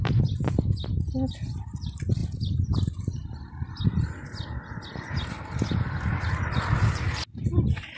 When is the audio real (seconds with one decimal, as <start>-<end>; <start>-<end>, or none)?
0.0-8.0